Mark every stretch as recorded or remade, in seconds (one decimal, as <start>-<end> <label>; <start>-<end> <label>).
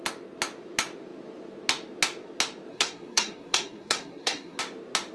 0.0-2.7 recorded; 2.7-4.6 remade; 4.6-5.1 recorded